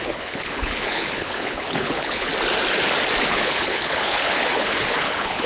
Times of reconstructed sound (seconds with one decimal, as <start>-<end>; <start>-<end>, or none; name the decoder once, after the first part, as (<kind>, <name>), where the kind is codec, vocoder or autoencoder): 0.0-2.3 (codec, HILCodec); 3.2-5.5

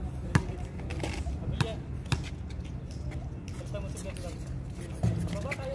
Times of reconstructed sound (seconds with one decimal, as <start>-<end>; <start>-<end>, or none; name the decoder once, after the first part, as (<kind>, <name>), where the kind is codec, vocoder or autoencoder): none